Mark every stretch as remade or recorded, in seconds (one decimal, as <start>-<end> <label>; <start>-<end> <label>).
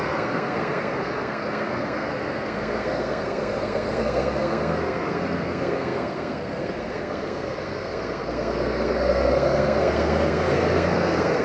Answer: 0.0-11.4 remade